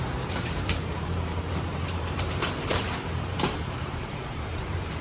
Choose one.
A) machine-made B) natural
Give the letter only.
A